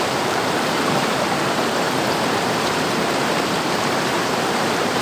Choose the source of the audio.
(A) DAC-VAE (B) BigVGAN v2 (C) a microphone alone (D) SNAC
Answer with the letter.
B